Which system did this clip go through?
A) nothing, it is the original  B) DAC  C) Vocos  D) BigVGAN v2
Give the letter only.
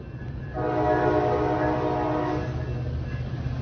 A